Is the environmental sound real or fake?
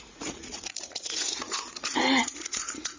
fake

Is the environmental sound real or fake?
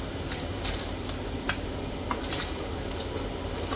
real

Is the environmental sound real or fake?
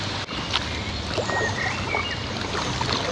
real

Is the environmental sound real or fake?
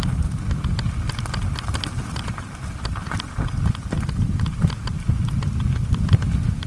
real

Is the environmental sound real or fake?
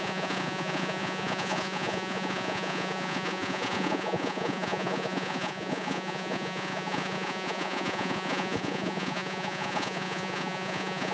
fake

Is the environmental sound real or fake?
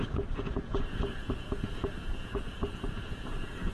fake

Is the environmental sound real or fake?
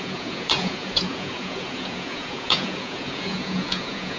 fake